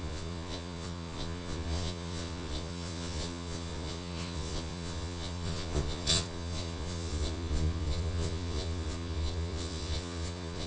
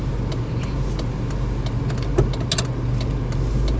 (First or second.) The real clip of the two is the second